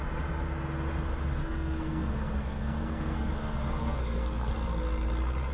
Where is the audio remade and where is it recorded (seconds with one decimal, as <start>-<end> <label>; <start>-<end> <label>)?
0.0-1.4 recorded; 1.4-3.3 remade; 3.3-3.8 recorded; 3.8-4.5 remade; 4.5-5.5 recorded